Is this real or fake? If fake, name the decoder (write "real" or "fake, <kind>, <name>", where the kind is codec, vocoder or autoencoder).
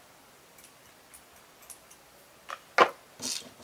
real